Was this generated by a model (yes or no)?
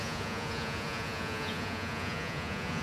yes